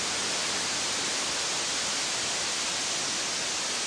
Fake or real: real